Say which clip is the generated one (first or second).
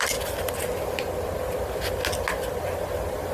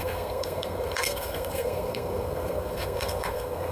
second